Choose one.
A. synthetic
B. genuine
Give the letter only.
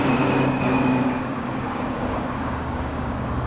A